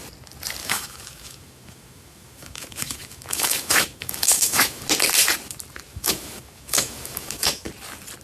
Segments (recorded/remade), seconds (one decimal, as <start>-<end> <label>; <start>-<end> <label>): 0.0-0.6 recorded; 0.6-4.8 remade; 4.8-5.9 recorded; 5.9-7.7 remade; 7.7-8.2 recorded